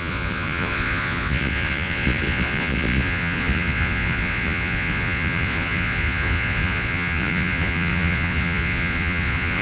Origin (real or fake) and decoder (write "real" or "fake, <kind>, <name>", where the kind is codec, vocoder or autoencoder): fake, vocoder, Vocos